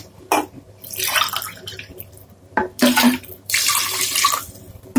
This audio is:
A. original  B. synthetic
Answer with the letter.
B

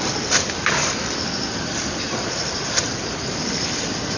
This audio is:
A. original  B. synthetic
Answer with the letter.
A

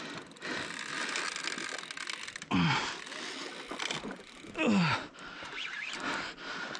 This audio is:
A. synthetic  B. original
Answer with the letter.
B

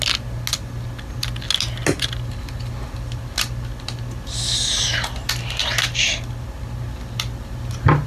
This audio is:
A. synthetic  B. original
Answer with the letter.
B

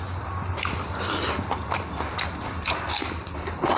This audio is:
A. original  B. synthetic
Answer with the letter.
A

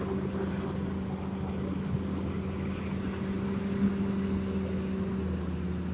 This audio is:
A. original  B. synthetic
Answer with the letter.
A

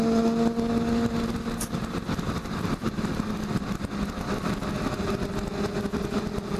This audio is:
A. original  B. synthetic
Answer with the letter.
A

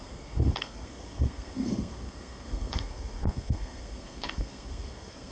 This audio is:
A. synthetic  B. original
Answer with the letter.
A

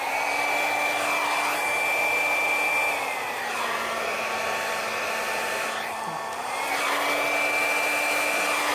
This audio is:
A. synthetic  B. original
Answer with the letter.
B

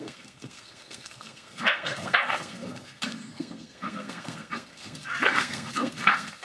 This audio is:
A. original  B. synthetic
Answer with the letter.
B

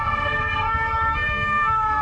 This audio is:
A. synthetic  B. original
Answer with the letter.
A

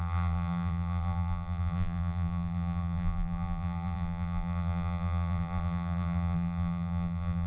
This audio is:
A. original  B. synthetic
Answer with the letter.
B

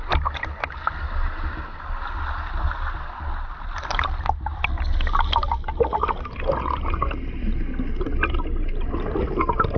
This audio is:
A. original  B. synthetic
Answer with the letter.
A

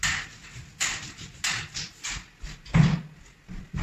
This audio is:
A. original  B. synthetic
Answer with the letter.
A